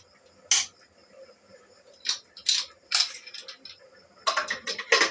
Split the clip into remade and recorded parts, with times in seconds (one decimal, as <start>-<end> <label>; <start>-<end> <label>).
0.0-5.1 recorded